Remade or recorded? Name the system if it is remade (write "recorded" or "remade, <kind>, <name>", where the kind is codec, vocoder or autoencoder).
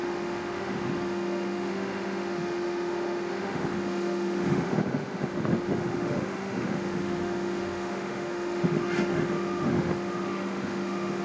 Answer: remade, autoencoder, DAC-VAE